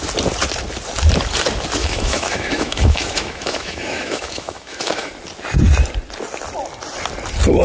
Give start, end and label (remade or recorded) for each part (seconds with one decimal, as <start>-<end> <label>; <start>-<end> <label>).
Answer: 0.0-1.8 recorded; 1.8-5.1 remade; 5.1-7.6 recorded